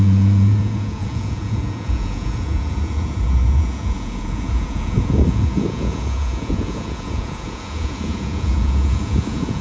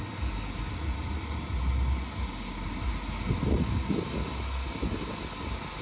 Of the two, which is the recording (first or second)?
second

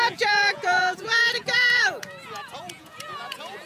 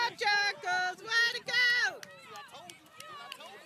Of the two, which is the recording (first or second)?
second